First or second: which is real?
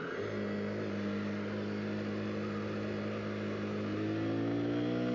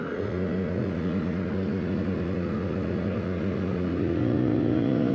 first